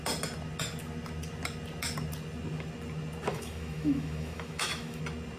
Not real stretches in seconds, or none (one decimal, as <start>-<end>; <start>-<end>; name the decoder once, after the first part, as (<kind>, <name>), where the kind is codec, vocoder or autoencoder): 3.3-5.0 (autoencoder, DAC-VAE)